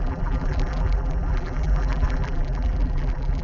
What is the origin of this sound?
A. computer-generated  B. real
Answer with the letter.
A